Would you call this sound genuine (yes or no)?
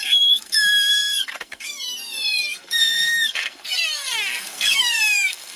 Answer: no